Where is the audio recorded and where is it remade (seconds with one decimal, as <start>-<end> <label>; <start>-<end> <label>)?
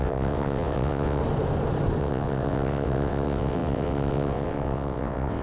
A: 0.0-1.2 remade; 1.2-2.0 recorded; 2.0-5.4 remade